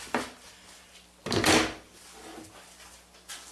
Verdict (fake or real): real